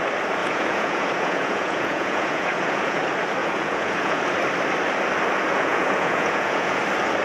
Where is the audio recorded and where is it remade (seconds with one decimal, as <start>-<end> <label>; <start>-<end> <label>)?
0.0-0.4 recorded; 0.4-3.0 remade; 3.0-3.4 recorded; 3.4-4.2 remade; 4.2-5.5 recorded; 5.5-6.8 remade; 6.8-7.2 recorded